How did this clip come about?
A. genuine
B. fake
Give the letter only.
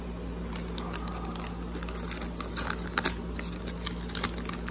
A